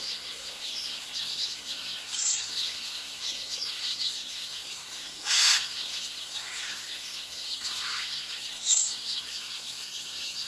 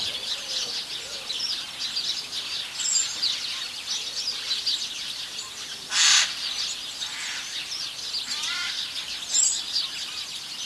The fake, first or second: first